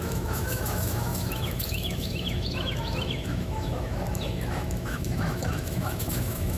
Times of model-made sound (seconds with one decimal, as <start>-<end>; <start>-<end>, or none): 0.0-6.6

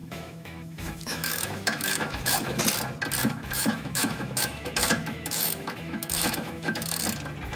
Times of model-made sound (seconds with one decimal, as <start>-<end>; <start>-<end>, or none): 0.0-2.6; 3.2-7.0